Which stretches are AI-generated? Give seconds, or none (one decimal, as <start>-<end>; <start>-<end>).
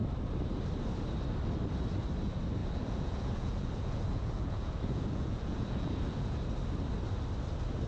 2.6-6.4